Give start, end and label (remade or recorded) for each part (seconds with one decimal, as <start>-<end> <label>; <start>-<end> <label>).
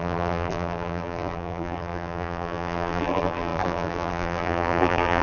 0.0-5.2 remade